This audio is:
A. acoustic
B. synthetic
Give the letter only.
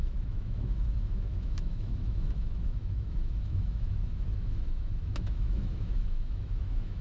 B